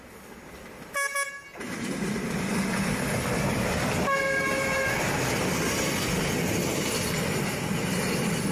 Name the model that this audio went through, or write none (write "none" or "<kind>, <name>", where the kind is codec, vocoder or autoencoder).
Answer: none